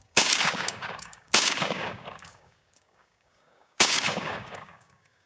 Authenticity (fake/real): fake